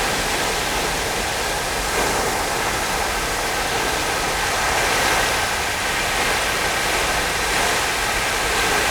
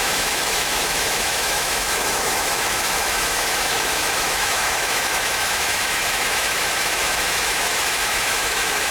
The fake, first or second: second